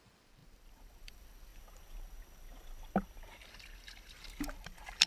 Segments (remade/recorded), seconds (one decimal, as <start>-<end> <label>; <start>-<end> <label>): 0.0-1.5 remade; 1.5-4.4 recorded; 4.4-5.1 remade